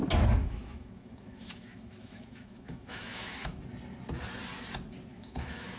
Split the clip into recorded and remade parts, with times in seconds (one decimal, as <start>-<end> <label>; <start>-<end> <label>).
0.0-0.4 recorded; 0.4-3.6 remade; 3.6-5.1 recorded; 5.1-5.8 remade